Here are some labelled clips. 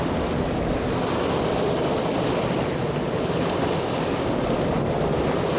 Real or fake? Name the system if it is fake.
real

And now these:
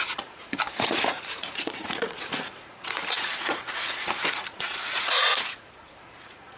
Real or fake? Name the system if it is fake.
fake, vocoder, Vocos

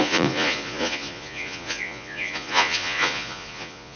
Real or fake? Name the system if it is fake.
fake, vocoder, Vocos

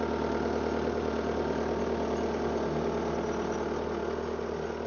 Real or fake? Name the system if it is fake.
real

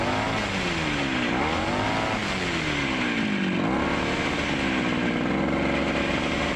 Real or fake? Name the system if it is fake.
real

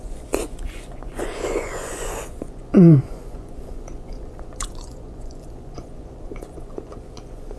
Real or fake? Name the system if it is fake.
fake, vocoder, Vocos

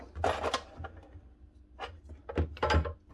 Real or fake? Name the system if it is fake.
real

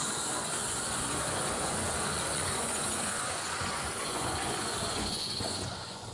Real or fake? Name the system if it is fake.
fake, vocoder, Vocos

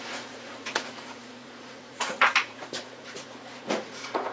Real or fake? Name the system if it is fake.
fake, vocoder, Vocos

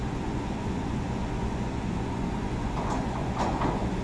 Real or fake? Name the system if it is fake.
fake, vocoder, Vocos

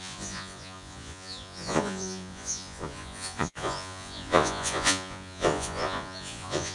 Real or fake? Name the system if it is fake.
fake, vocoder, Vocos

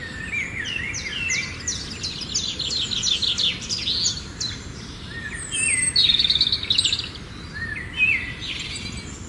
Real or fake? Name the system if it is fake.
real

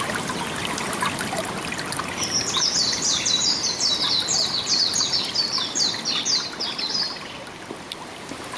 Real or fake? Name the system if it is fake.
real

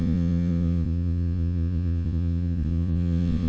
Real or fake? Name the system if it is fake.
fake, vocoder, Vocos